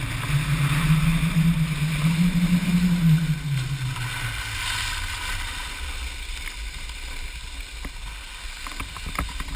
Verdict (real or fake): real